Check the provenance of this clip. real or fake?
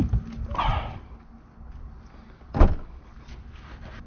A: real